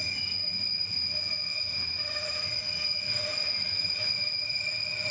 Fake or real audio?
fake